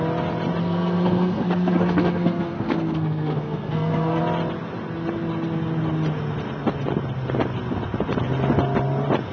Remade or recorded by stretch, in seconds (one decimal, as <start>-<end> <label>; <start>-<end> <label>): 0.0-0.6 recorded; 0.6-4.2 remade; 4.2-9.3 recorded